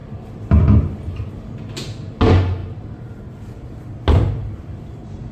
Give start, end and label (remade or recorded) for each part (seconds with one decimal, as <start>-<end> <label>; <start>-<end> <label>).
0.0-1.3 remade; 1.3-4.4 recorded; 4.4-5.3 remade